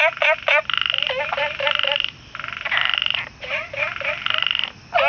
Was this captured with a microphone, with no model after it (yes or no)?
yes